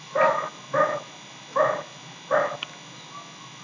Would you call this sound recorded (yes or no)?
yes